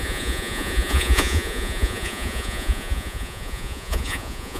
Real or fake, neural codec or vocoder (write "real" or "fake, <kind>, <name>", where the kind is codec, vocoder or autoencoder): fake, vocoder, Vocos